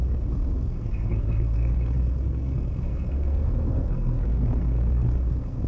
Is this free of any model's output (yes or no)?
no